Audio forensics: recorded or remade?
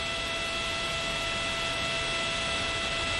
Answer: recorded